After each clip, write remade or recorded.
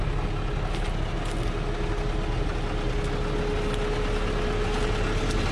recorded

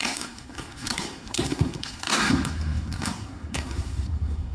remade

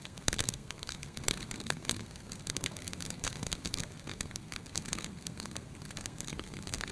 remade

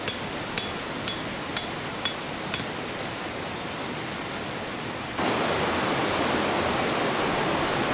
recorded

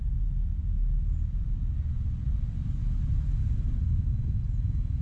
recorded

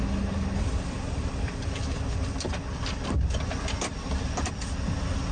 remade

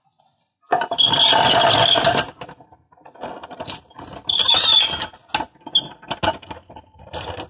recorded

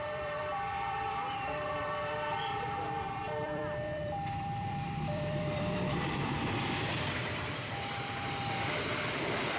remade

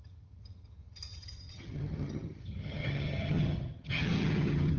remade